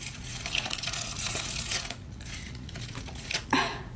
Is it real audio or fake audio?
fake